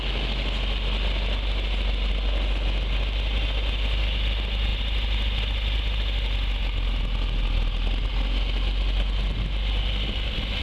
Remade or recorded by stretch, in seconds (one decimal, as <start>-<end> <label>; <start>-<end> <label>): 0.0-10.6 recorded